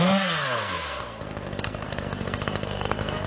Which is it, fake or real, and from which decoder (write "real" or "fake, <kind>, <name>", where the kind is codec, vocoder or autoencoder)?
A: fake, codec, SNAC